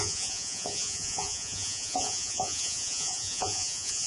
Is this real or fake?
fake